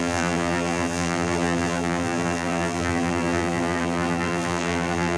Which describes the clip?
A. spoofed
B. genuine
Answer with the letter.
A